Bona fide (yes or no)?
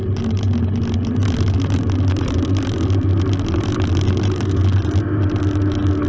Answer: yes